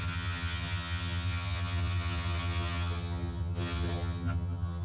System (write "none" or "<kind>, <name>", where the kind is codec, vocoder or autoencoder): vocoder, HiFi-GAN